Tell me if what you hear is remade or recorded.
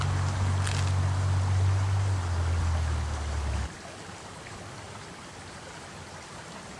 recorded